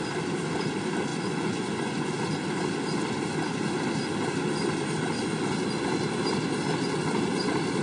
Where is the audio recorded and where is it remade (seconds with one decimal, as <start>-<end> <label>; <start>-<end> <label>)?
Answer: 0.0-1.1 recorded; 1.1-2.2 remade; 2.2-7.8 recorded

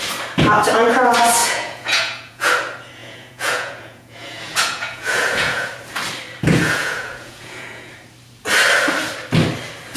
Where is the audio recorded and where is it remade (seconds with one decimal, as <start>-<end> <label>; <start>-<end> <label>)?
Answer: 0.0-1.4 recorded; 1.4-2.5 remade; 2.5-3.0 recorded; 3.0-5.7 remade; 5.7-6.6 recorded; 6.6-7.9 remade; 7.9-10.0 recorded

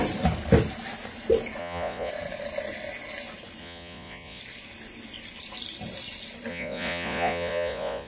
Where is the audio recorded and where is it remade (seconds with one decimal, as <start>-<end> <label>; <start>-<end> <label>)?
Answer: 0.0-1.6 recorded; 1.6-2.1 remade; 2.1-3.6 recorded; 3.6-4.4 remade; 4.4-6.5 recorded; 6.5-8.1 remade

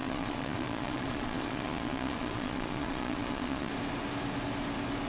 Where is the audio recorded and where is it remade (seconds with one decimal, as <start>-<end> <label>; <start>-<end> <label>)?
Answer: 0.0-3.7 remade; 3.7-5.1 recorded

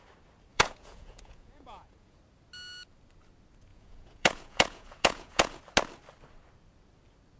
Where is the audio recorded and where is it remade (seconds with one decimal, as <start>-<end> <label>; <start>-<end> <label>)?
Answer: 0.0-0.5 recorded; 0.5-2.2 remade; 2.2-3.7 recorded; 3.7-5.6 remade; 5.6-7.4 recorded